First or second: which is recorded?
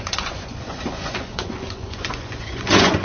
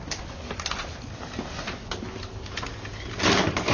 second